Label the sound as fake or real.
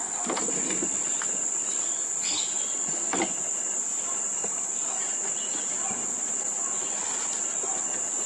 real